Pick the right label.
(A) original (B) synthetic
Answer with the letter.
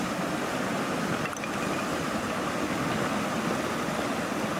A